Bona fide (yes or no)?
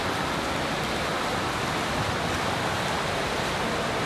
yes